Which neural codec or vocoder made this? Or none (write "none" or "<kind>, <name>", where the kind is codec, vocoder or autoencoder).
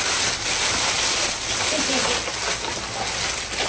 none